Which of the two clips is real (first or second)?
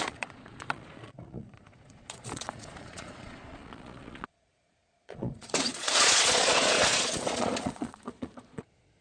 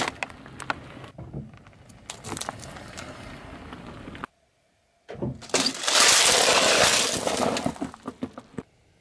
second